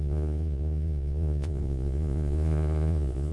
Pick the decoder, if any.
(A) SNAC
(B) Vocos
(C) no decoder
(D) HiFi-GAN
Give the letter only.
B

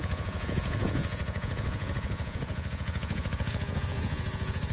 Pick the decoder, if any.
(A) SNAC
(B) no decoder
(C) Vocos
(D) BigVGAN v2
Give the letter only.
C